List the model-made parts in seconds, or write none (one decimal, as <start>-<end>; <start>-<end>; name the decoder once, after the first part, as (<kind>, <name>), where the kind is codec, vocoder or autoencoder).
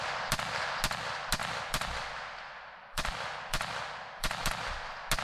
1.4-4.5 (vocoder, BigVGAN v2)